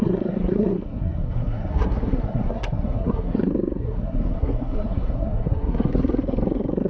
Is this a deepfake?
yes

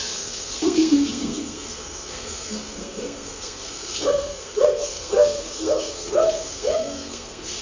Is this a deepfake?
yes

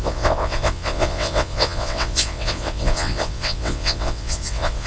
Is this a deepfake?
yes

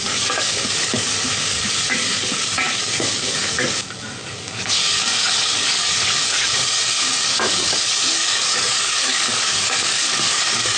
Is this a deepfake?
yes